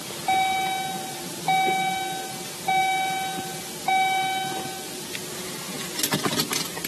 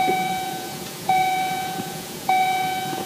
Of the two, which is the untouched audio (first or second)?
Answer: first